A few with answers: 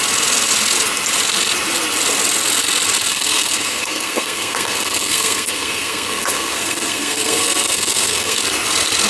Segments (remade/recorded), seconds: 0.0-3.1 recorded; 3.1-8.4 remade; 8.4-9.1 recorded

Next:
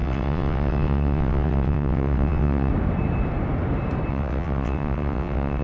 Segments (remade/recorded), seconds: 0.0-2.7 remade; 2.7-4.1 recorded; 4.1-5.6 remade

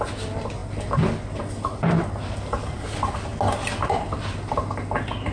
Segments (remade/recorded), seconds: 0.0-5.3 recorded

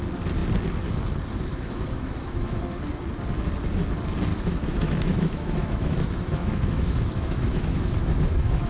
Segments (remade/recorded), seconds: 0.0-1.5 recorded; 1.5-2.5 remade; 2.5-4.3 recorded; 4.3-8.7 remade

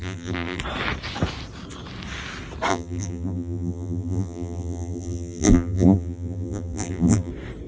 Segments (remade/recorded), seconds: 0.0-0.6 remade; 0.6-2.7 recorded; 2.7-7.3 remade; 7.3-7.7 recorded

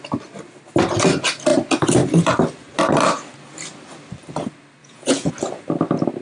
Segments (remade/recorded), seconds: 0.0-4.8 recorded; 4.8-5.3 remade; 5.3-6.2 recorded